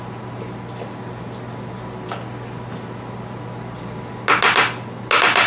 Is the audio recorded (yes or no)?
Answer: yes